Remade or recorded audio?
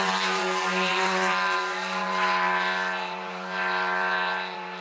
remade